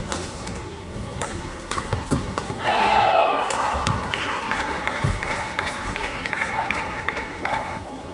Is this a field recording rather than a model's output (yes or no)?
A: no